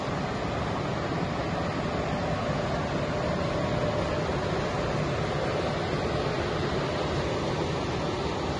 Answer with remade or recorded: recorded